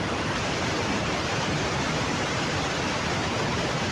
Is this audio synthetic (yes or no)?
yes